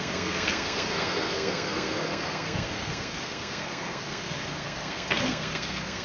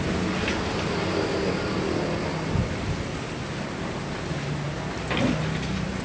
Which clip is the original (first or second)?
second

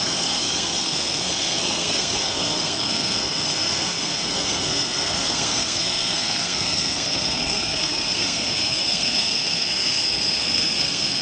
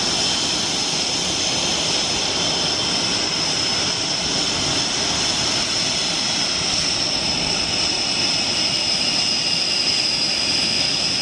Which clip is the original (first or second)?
second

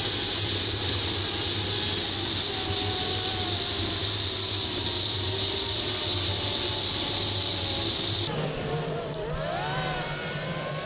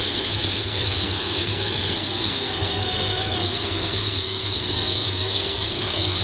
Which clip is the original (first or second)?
first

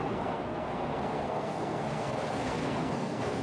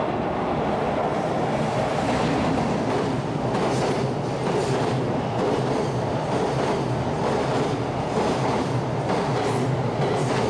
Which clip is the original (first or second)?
second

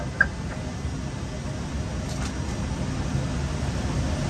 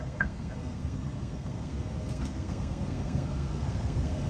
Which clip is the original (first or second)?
first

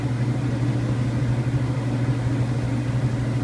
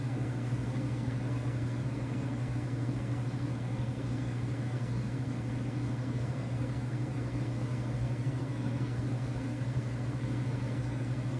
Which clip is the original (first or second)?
first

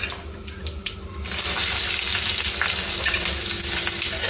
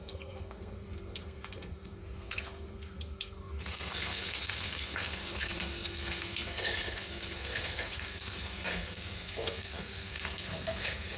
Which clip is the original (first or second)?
first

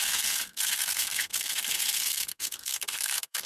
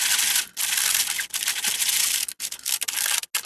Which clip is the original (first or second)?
second